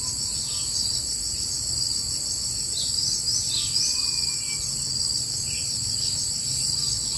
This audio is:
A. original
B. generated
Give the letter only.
A